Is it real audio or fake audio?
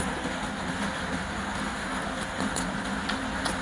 real